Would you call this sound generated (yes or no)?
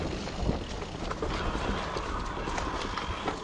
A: no